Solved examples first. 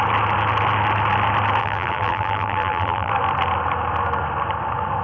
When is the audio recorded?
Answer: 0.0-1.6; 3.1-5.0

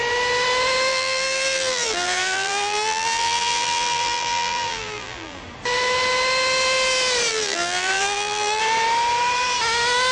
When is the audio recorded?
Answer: 0.0-0.9; 5.4-7.3; 8.6-10.1

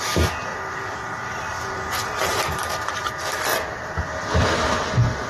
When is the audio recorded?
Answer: 0.0-0.5; 3.1-3.5; 4.0-5.3

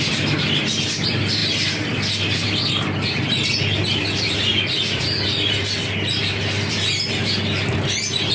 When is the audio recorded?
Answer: 0.0-8.3